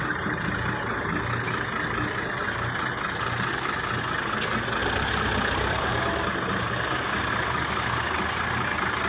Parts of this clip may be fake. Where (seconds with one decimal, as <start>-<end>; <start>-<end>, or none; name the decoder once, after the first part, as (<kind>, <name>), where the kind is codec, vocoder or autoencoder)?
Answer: none

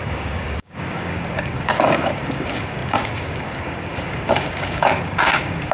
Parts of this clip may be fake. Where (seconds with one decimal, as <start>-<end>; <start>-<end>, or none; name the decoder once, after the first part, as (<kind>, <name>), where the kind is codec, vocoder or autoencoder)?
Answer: 0.0-5.7 (codec, DAC)

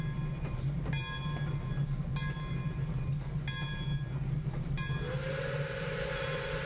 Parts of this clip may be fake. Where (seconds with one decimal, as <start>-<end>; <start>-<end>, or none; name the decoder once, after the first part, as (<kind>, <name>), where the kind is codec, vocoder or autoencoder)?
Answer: none

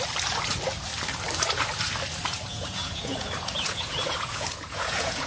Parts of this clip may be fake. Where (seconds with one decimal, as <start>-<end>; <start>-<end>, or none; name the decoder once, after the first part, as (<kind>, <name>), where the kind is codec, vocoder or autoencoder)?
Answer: 2.3-5.3 (vocoder, Vocos)

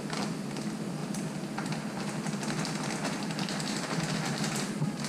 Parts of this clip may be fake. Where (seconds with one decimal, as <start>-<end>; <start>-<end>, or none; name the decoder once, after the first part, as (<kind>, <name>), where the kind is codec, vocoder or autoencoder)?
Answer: none

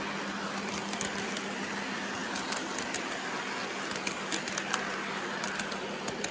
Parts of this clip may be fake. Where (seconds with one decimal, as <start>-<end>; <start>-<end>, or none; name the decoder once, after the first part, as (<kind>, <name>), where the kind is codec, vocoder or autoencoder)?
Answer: none

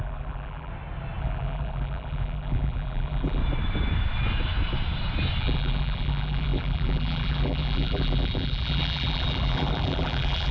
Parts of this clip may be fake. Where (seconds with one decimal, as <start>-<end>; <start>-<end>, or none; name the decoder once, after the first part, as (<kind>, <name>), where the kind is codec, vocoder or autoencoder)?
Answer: 0.0-0.7 (vocoder, BigVGAN v2); 1.2-3.4; 5.4-10.5